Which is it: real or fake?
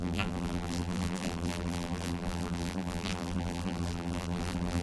fake